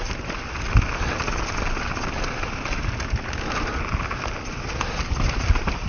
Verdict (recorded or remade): recorded